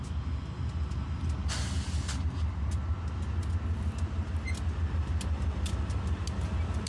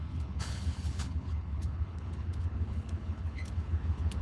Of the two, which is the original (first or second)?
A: first